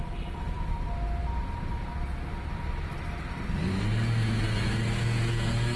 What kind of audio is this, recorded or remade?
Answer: recorded